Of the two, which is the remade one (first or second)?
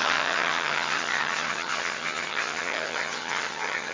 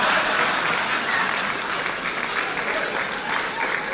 first